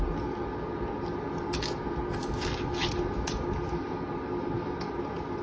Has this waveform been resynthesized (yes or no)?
no